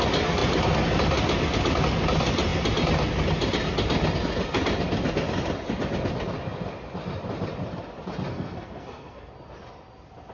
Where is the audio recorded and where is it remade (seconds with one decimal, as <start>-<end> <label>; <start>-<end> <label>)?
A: 0.0-8.3 recorded; 8.3-9.3 remade; 9.3-10.3 recorded